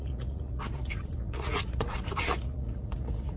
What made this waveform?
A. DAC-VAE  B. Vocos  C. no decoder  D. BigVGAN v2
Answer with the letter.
B